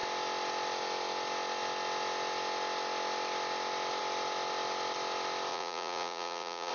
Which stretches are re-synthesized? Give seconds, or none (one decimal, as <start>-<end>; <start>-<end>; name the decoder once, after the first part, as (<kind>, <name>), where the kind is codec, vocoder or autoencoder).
5.5-6.7 (vocoder, Vocos)